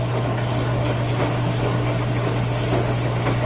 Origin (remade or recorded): recorded